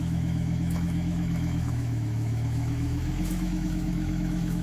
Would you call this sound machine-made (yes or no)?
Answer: yes